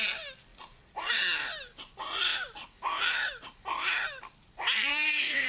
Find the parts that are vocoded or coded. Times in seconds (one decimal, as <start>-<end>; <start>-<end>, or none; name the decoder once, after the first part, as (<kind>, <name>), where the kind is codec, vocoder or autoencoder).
4.9-5.5 (codec, SNAC)